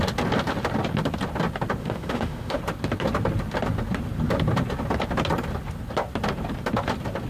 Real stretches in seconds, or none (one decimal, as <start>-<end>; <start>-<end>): 0.0-1.8; 2.6-7.3